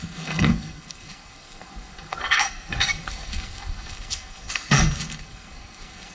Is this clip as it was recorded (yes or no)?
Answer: no